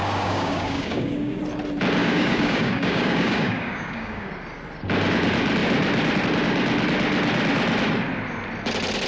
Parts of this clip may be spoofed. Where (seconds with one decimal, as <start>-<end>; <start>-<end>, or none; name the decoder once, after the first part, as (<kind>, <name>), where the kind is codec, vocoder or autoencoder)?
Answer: 0.0-1.4 (codec, DAC); 2.0-4.3